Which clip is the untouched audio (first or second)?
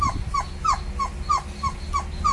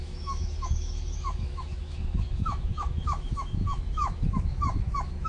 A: first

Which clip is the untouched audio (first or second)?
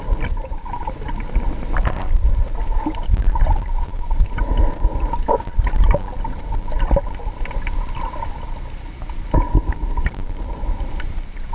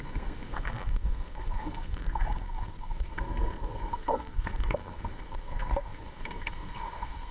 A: first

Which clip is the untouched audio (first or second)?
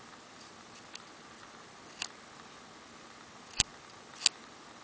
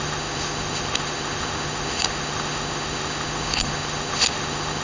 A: first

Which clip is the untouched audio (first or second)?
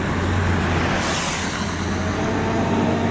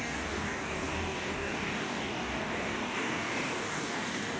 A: first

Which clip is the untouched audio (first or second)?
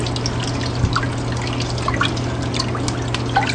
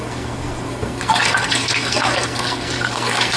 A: first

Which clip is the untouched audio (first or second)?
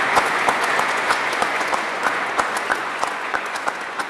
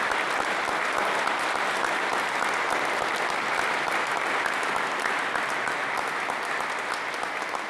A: second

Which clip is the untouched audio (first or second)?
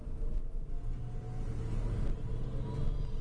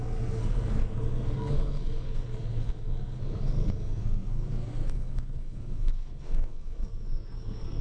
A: first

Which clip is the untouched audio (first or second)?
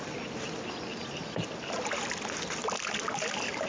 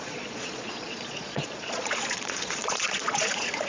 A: first